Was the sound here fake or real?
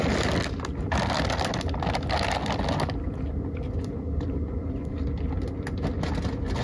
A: real